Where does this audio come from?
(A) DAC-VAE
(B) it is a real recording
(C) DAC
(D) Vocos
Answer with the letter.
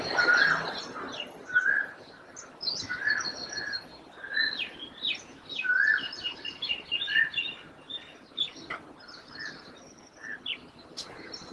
B